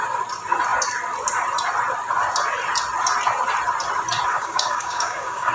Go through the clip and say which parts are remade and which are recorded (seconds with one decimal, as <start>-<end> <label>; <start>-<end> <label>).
0.0-4.3 recorded; 4.3-5.5 remade